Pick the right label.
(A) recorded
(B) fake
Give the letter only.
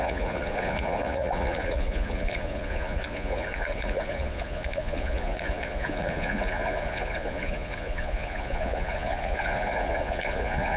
B